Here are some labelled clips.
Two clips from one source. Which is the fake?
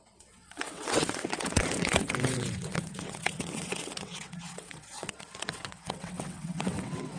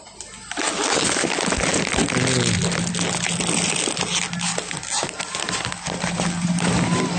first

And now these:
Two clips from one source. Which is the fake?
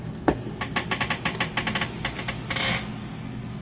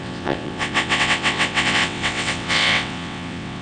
second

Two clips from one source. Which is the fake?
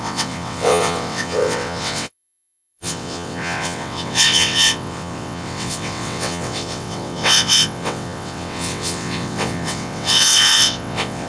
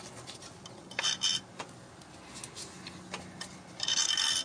first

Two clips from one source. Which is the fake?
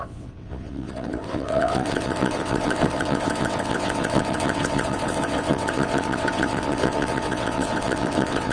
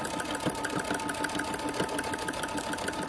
first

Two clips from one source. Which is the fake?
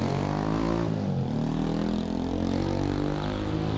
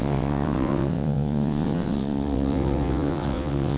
second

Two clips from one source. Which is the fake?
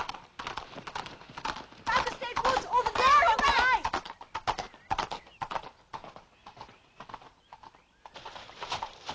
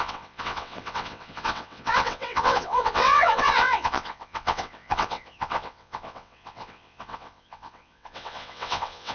second